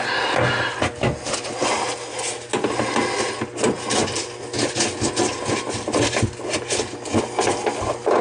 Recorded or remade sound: recorded